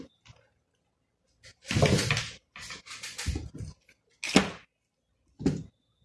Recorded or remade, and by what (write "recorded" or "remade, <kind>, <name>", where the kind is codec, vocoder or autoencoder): recorded